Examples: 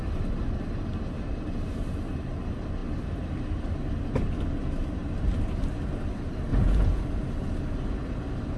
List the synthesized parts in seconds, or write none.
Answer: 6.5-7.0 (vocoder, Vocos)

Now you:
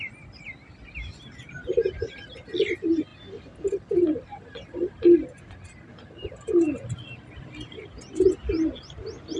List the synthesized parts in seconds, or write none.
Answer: none

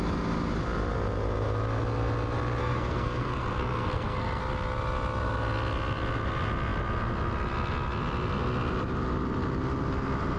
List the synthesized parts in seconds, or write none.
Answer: 2.6-4.4 (codec, SNAC)